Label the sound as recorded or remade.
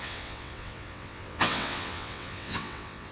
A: remade